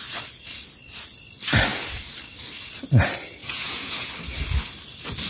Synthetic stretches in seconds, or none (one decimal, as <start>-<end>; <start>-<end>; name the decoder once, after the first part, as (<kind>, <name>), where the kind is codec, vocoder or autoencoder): 3.4-4.1 (vocoder, Vocos)